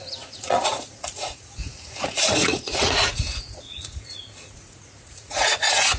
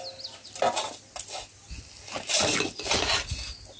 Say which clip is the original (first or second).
second